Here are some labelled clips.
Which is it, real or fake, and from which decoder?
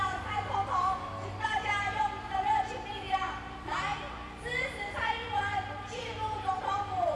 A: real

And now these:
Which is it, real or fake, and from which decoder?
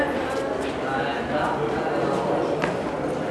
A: real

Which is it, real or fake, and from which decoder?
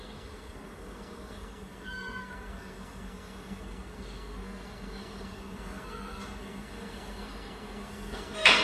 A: fake, codec, SNAC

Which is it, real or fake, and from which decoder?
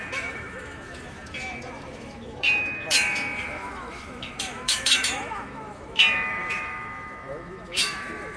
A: fake, autoencoder, DAC-VAE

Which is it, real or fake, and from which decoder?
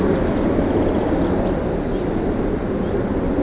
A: real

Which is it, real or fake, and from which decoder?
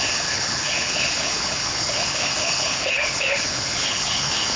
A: fake, codec, HILCodec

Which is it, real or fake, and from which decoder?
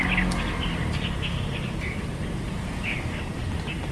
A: real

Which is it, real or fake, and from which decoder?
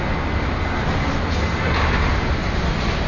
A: real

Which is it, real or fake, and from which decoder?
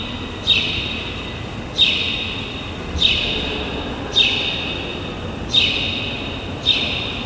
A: real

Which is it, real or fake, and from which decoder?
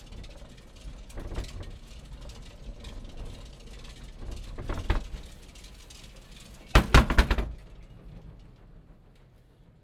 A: real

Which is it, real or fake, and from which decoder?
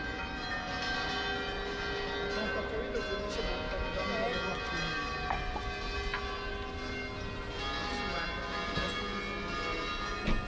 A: real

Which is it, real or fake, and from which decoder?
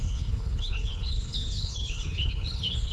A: fake, codec, HILCodec